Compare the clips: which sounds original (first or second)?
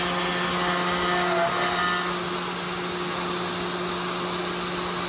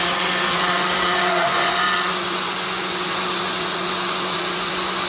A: first